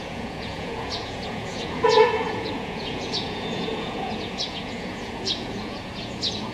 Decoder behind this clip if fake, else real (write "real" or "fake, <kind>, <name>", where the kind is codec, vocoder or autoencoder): fake, vocoder, Vocos